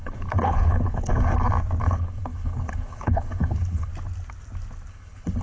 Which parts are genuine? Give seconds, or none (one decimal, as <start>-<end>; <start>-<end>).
1.1-1.8; 3.9-4.9